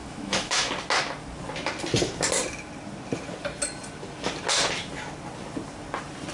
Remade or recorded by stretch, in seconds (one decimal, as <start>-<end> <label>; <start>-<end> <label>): 0.0-0.7 remade; 0.7-6.3 recorded